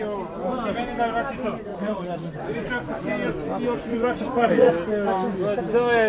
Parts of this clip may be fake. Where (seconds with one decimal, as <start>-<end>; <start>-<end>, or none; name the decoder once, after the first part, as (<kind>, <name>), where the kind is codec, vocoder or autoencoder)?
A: 1.7-2.7 (vocoder, Vocos); 3.9-4.7

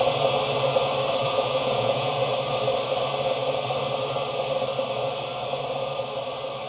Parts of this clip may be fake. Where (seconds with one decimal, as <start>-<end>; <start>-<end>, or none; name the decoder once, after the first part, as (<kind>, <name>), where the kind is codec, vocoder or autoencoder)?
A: 1.2-2.1 (vocoder, Vocos)

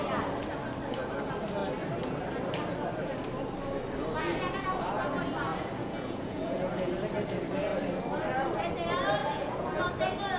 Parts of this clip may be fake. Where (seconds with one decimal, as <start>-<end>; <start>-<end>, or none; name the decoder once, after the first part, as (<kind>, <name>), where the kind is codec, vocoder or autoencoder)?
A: 5.5-6.9 (vocoder, Vocos); 9.2-9.8

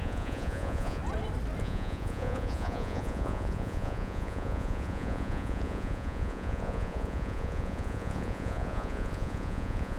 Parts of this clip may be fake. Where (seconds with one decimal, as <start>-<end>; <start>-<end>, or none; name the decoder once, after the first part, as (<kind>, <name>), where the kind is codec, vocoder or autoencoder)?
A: 0.0-1.0 (vocoder, Vocos); 1.6-10.0

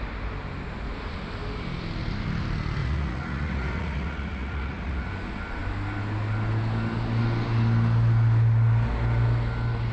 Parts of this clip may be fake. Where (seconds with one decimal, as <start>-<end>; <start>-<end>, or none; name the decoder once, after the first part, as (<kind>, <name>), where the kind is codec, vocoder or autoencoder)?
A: 2.8-5.1 (vocoder, Vocos)

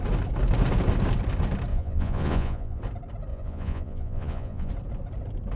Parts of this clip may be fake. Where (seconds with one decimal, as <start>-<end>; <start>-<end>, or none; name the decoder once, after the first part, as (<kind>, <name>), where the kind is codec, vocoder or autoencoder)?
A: 1.7-2.8 (vocoder, Vocos); 3.3-4.7